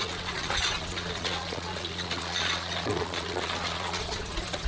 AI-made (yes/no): yes